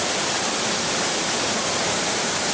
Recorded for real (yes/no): yes